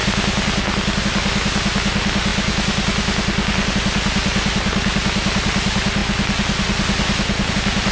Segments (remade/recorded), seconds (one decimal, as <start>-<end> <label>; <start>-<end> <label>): 0.0-7.9 recorded